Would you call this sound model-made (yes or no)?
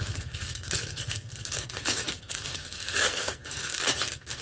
yes